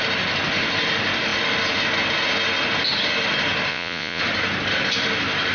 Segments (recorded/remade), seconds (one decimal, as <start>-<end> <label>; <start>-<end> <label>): 0.0-3.7 recorded; 3.7-4.2 remade; 4.2-5.5 recorded